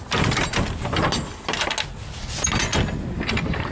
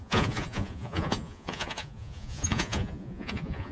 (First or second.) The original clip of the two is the first